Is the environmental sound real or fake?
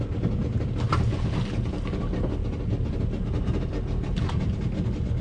real